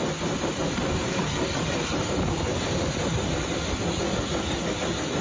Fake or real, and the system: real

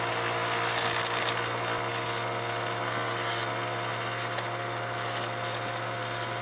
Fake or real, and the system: real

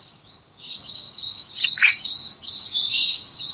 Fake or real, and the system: fake, codec, DAC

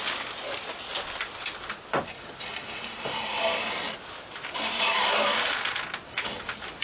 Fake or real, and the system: real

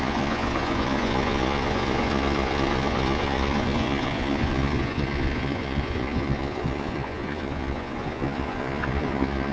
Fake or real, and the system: fake, vocoder, Vocos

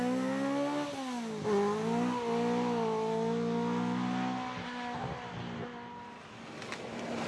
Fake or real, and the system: real